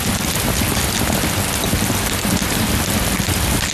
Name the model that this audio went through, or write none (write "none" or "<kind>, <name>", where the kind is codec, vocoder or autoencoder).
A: none